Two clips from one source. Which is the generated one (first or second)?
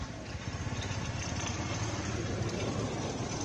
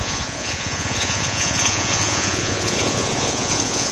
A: second